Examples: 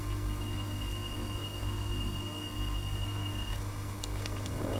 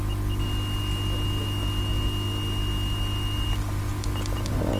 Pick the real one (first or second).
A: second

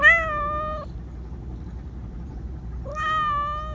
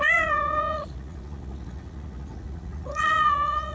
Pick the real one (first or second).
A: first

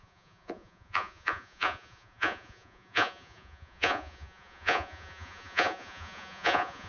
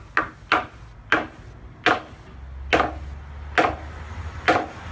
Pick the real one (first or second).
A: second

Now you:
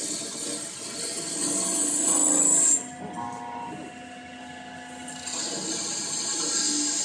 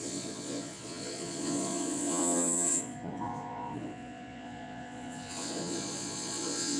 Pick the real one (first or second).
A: first